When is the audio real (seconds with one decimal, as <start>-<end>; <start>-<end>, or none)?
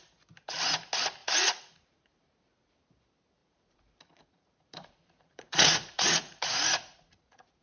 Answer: 0.0-1.2; 2.2-3.4